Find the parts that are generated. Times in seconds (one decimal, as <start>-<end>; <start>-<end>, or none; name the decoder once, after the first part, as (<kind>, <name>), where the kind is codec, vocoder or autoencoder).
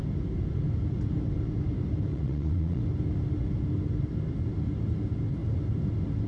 2.1-2.8 (vocoder, Vocos)